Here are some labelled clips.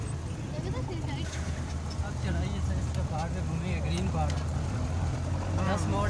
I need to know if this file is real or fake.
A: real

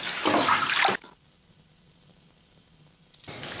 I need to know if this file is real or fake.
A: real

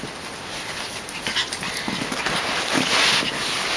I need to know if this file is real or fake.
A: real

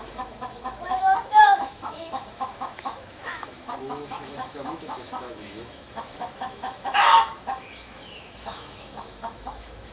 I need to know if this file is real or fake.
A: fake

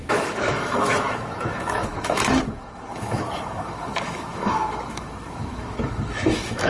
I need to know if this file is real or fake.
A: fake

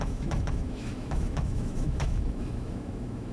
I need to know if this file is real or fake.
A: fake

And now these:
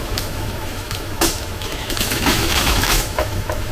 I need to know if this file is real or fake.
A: fake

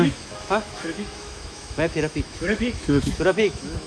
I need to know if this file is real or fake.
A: fake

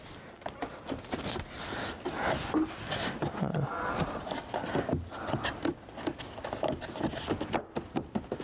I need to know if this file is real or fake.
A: real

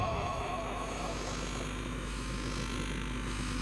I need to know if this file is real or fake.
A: fake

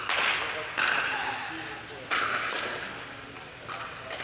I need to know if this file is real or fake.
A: real